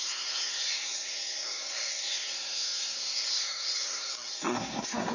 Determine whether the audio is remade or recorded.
remade